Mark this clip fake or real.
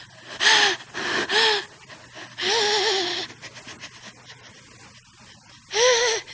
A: real